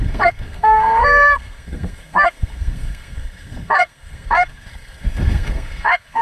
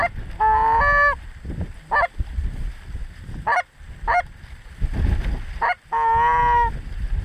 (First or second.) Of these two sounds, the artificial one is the first